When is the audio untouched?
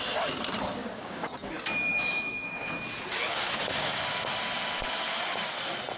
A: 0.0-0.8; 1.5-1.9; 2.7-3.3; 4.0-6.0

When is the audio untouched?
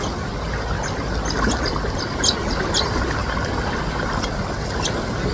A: 0.0-5.3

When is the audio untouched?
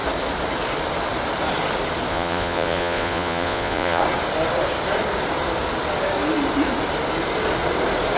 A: 0.0-2.1; 4.0-8.2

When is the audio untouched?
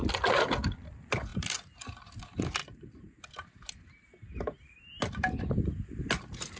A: 0.0-6.6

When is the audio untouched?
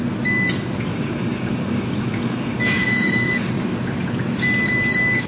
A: 0.0-0.9; 3.5-5.3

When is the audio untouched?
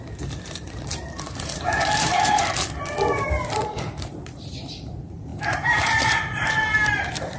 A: 2.4-3.6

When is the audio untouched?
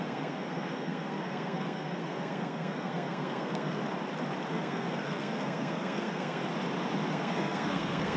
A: 3.8-4.5; 6.4-7.1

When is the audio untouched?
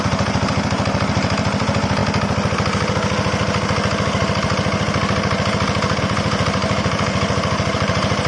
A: 2.0-6.0